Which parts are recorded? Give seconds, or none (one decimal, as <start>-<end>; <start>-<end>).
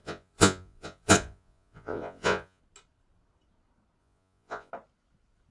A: 2.6-4.0; 4.7-5.5